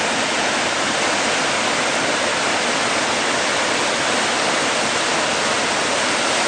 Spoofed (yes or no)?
no